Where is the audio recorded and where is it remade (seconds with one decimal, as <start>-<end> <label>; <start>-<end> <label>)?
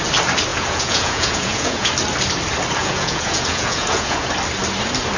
0.0-0.5 recorded; 0.5-1.9 remade; 1.9-2.8 recorded; 2.8-4.3 remade; 4.3-5.2 recorded